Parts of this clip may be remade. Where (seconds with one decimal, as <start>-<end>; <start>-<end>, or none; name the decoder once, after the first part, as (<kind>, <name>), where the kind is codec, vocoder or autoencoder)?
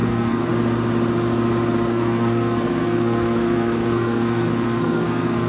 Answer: 0.0-0.5 (codec, SNAC); 1.9-5.5